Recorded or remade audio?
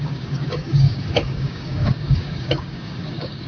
remade